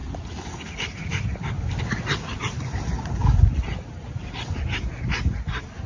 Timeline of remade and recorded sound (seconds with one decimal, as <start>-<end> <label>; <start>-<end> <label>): 0.0-5.9 recorded